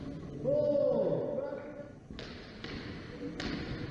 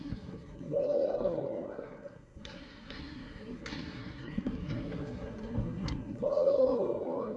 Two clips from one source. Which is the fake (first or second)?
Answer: second